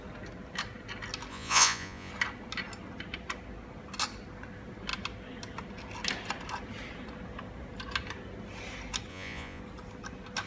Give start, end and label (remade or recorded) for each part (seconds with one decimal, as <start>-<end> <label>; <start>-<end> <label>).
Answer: 0.0-1.3 recorded; 1.3-2.1 remade; 2.1-9.1 recorded; 9.1-9.6 remade; 9.6-10.5 recorded